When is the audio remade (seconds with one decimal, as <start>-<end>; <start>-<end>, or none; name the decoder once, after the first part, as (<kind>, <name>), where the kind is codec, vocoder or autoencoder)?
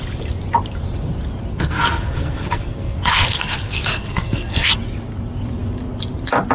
1.5-4.7 (codec, SNAC)